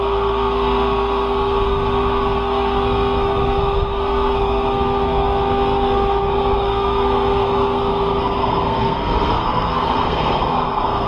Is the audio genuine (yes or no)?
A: no